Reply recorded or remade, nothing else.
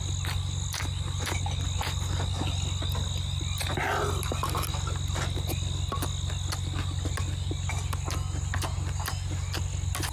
recorded